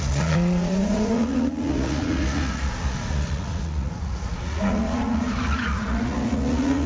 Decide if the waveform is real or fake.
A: fake